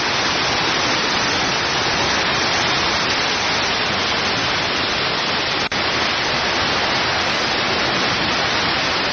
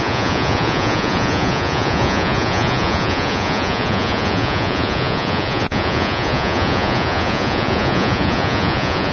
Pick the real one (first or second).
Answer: first